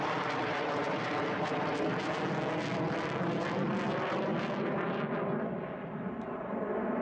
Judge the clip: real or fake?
real